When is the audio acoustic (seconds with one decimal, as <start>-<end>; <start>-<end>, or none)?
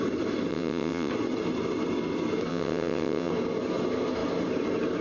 0.0-0.5; 1.1-2.5; 3.3-5.0